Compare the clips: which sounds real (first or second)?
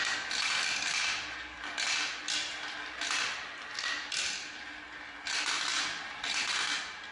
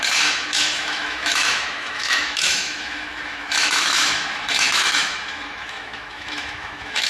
first